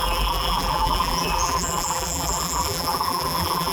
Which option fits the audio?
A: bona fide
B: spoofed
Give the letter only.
B